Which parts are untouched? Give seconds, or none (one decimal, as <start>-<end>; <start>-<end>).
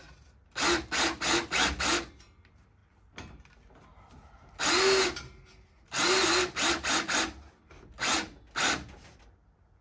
0.0-9.8